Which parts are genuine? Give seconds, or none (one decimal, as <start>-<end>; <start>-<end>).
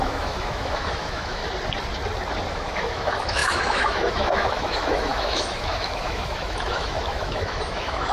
1.4-2.5